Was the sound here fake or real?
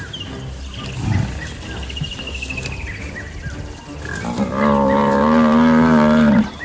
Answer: real